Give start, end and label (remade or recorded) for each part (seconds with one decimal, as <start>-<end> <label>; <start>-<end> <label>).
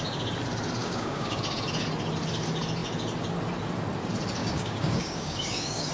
0.0-0.8 recorded; 0.8-1.4 remade; 1.4-4.4 recorded; 4.4-5.9 remade